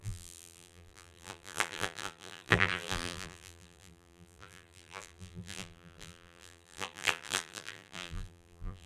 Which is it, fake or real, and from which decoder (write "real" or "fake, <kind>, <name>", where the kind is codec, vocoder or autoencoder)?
fake, vocoder, BigVGAN v2